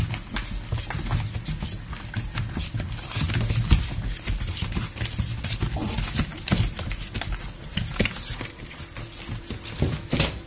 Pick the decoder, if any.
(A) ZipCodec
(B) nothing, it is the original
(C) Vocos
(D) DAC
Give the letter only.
B